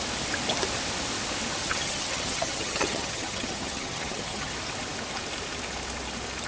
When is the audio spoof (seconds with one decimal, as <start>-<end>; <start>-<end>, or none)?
1.6-4.5